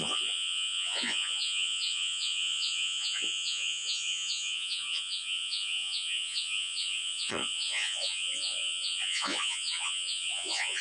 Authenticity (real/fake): fake